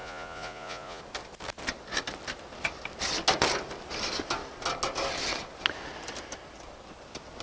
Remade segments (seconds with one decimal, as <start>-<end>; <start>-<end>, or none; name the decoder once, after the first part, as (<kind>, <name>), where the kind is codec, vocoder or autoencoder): 0.0-1.0 (vocoder, Vocos)